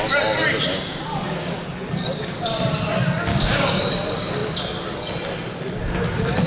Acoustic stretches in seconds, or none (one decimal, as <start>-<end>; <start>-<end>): 0.0-0.7; 1.6-3.3; 3.8-6.5